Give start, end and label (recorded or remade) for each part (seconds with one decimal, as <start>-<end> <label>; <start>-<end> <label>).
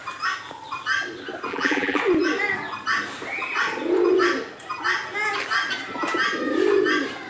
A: 0.0-1.5 recorded; 1.5-2.0 remade; 2.0-7.3 recorded